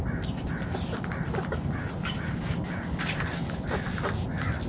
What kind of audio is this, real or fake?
real